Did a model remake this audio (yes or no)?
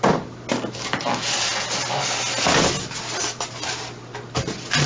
no